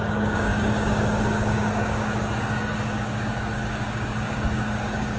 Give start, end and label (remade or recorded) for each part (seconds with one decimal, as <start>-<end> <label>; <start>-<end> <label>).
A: 0.0-5.2 remade